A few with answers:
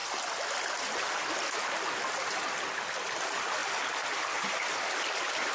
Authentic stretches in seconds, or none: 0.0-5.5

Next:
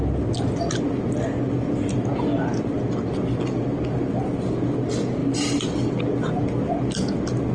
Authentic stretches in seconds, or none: 0.0-7.5

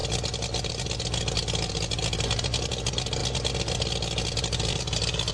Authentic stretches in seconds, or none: 0.0-5.3